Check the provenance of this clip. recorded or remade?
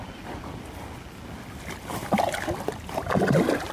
recorded